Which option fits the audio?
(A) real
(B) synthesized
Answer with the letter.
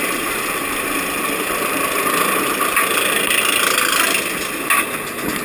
A